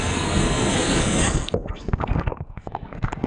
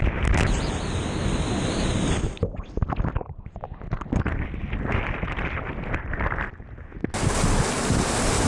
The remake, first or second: first